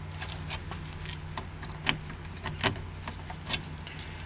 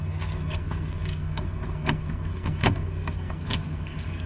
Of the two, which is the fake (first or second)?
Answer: second